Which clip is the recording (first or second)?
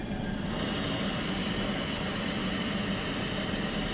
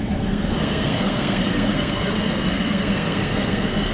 first